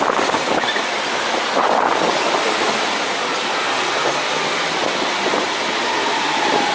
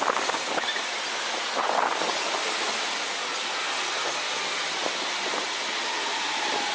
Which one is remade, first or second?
first